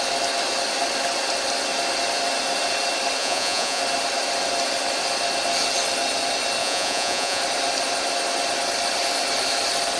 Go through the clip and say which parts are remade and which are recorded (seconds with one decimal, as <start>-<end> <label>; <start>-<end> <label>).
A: 0.0-3.2 recorded; 3.2-3.8 remade; 3.8-6.6 recorded; 6.6-7.4 remade; 7.4-10.0 recorded